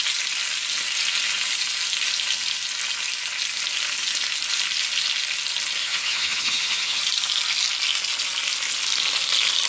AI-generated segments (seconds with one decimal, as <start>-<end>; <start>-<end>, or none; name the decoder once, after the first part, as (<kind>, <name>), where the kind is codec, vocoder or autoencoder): 5.8-7.0 (vocoder, HiFi-GAN)